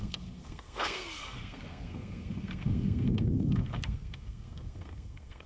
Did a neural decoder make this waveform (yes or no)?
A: yes